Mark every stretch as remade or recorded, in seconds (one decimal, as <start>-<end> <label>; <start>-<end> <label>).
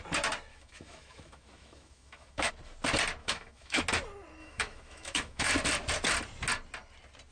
0.0-0.5 recorded; 0.5-2.5 remade; 2.5-3.2 recorded; 3.2-3.8 remade; 3.8-4.4 recorded; 4.4-5.5 remade; 5.5-7.3 recorded